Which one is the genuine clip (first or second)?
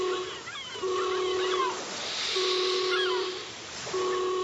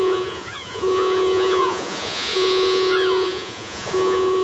first